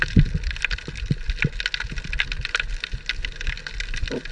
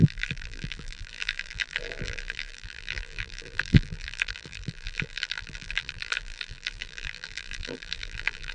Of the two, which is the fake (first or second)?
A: second